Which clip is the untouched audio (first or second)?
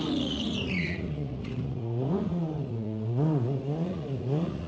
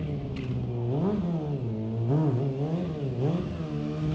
second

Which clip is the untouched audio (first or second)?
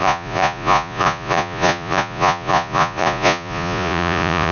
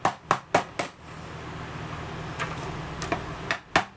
second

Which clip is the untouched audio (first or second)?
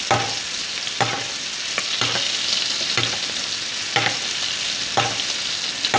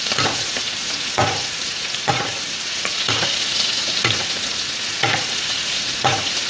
first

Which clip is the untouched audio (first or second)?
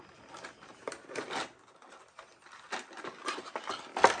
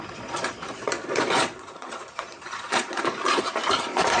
first